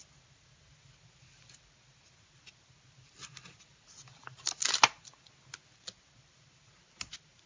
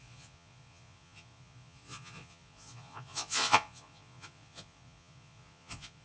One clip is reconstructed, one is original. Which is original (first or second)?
first